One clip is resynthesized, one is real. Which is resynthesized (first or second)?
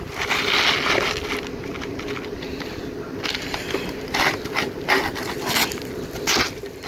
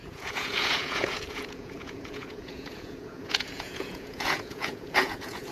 second